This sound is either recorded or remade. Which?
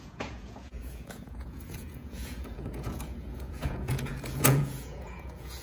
remade